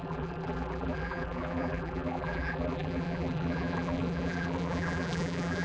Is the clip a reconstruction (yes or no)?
yes